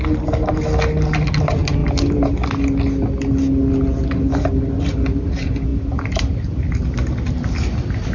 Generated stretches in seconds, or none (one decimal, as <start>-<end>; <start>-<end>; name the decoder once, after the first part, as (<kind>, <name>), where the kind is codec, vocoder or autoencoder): none